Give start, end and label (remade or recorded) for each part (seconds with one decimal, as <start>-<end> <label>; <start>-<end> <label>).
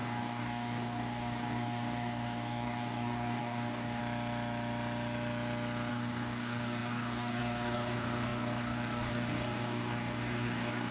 0.0-4.0 remade; 4.0-5.9 recorded; 5.9-10.9 remade